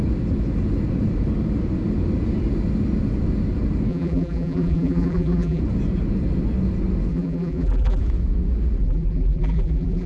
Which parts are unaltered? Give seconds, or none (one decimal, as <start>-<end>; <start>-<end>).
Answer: 0.0-3.9; 5.6-7.1; 8.0-8.8